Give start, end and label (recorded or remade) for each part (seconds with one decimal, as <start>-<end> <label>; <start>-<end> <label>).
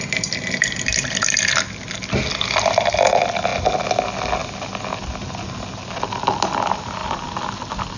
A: 0.0-8.0 recorded